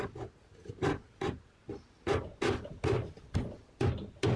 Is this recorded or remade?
recorded